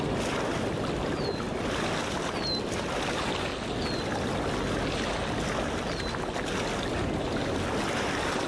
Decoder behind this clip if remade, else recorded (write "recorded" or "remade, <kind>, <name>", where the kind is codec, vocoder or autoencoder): recorded